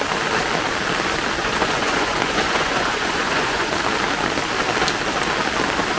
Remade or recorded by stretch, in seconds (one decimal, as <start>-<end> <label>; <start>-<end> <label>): 0.0-1.4 recorded; 1.4-3.7 remade; 3.7-6.0 recorded